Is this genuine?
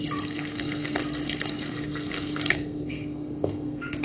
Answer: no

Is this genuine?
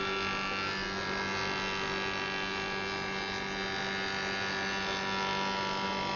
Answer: yes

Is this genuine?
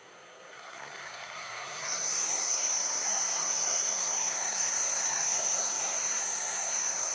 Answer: no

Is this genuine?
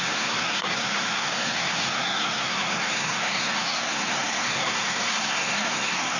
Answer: no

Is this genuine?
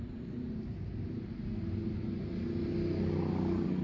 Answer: yes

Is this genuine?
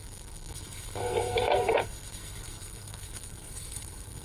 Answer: no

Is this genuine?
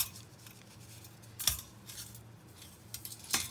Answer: yes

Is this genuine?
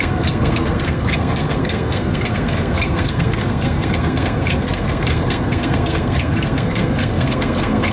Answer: no